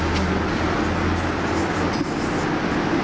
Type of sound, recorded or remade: recorded